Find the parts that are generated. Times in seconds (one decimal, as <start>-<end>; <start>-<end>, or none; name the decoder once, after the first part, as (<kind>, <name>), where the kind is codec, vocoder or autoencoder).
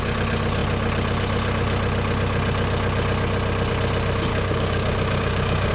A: 4.3-5.7 (codec, DAC)